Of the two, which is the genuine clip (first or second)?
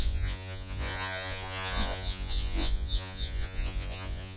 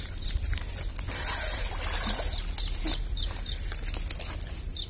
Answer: second